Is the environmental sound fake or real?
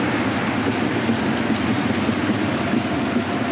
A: real